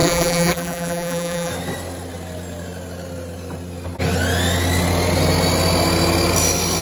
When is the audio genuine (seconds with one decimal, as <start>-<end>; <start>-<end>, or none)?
1.5-6.8